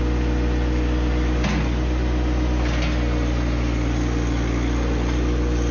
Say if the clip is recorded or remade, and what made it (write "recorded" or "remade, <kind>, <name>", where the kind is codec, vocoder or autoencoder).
recorded